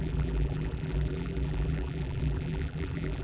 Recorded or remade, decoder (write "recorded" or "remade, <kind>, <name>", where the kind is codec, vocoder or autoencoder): remade, vocoder, BigVGAN v2